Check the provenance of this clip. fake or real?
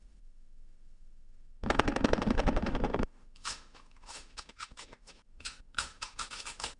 fake